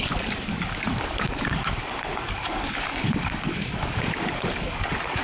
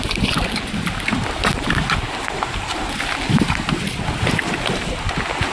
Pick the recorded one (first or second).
second